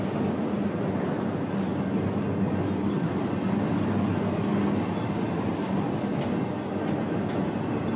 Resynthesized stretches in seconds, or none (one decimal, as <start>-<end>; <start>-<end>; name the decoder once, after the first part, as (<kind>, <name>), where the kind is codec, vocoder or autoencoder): none